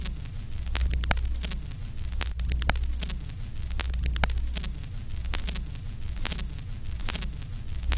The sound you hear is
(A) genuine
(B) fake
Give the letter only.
A